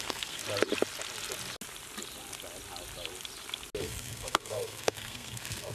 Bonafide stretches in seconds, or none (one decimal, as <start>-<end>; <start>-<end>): 0.4-3.8